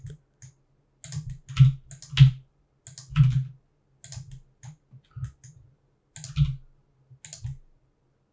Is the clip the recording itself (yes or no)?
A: yes